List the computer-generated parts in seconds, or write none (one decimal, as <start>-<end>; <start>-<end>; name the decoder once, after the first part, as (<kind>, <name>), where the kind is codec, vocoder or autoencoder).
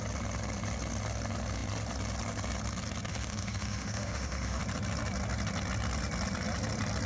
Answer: 3.1-4.6 (autoencoder, DAC-VAE)